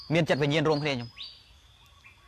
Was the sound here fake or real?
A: real